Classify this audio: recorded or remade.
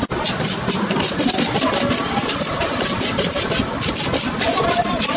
recorded